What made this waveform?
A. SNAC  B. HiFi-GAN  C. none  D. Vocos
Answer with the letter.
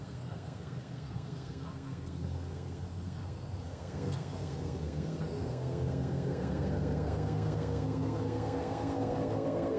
A